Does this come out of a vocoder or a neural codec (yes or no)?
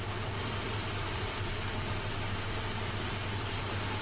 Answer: yes